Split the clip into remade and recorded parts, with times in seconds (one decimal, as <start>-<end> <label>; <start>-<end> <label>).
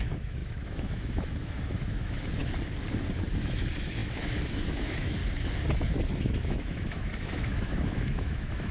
0.0-2.4 remade; 2.4-3.3 recorded; 3.3-5.2 remade; 5.2-6.2 recorded; 6.2-8.7 remade